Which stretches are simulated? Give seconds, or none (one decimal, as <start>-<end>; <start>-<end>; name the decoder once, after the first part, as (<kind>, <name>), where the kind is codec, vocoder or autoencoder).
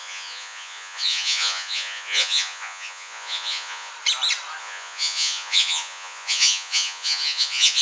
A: 0.0-3.9 (vocoder, Vocos); 4.6-7.8